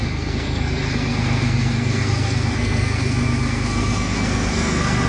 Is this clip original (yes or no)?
no